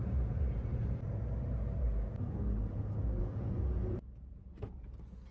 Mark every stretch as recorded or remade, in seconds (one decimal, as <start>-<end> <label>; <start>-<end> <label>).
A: 0.0-3.2 recorded; 3.2-5.3 remade